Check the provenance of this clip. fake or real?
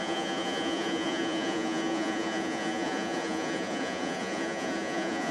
fake